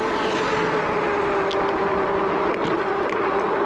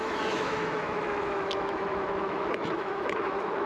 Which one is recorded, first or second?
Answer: first